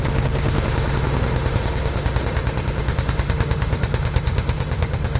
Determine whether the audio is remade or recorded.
remade